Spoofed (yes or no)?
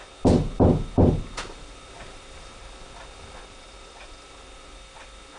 no